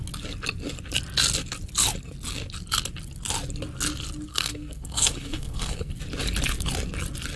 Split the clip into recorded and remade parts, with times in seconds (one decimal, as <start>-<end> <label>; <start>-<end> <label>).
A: 0.0-4.3 recorded; 4.3-5.9 remade; 5.9-7.4 recorded